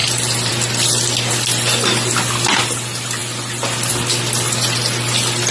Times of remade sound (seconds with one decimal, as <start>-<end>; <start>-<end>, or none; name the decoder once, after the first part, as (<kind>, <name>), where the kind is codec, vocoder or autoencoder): none

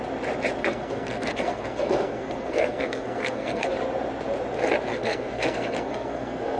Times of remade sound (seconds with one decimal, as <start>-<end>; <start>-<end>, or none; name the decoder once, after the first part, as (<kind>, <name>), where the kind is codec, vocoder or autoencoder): 0.6-3.7 (codec, SNAC); 4.9-6.6